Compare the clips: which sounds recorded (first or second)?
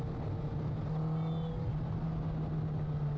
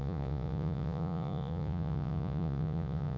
first